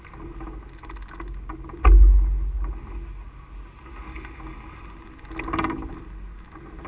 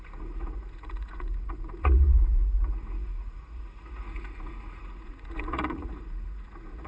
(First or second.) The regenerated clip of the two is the second